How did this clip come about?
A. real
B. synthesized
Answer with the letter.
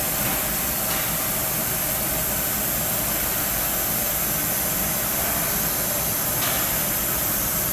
A